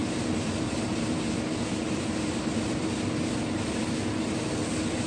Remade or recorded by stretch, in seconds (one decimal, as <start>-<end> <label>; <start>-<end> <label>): 0.0-5.1 recorded